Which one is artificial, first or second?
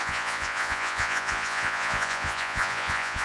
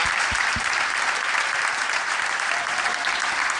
first